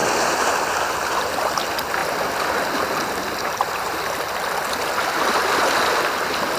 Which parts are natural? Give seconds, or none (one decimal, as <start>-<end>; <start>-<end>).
0.0-6.6